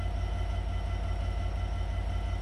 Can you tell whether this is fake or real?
real